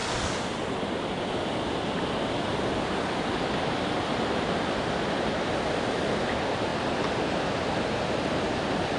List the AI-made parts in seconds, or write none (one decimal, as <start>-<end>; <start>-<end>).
none